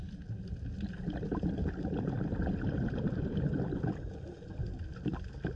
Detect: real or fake real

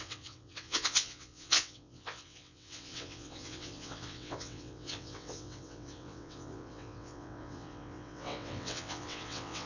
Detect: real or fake fake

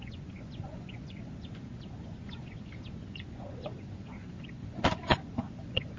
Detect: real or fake fake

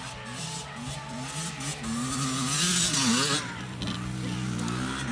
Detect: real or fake real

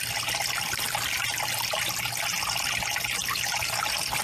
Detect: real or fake real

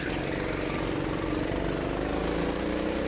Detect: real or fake real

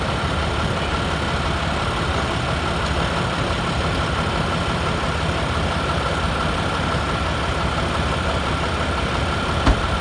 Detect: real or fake real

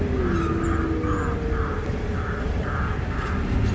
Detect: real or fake real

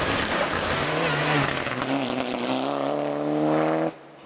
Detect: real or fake real